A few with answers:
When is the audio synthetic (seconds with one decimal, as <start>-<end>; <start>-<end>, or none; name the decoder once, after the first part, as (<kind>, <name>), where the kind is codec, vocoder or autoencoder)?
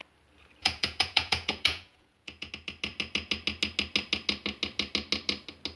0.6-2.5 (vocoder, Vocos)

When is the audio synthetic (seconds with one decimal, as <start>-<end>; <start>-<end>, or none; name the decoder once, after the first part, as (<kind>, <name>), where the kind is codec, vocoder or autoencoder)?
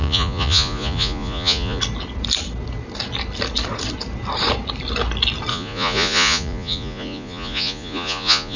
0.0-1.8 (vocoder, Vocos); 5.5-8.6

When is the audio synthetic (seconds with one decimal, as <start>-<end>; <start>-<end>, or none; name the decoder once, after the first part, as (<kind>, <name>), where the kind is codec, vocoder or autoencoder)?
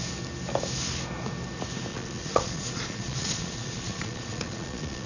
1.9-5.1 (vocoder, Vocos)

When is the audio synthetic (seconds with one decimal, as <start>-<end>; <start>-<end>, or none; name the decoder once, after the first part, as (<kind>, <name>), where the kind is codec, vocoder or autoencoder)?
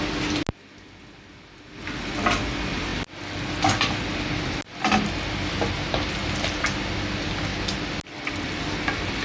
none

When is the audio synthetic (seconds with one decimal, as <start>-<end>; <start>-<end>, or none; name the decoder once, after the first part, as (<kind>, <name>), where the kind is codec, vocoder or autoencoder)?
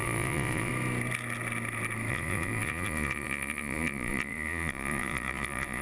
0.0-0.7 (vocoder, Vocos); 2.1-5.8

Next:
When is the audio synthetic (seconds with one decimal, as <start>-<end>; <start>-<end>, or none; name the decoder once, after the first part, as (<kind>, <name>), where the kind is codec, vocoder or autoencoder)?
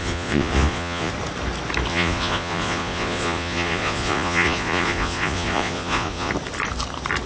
0.0-1.1 (vocoder, Vocos); 1.9-6.3